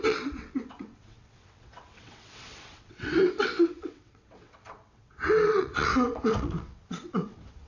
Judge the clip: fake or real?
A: fake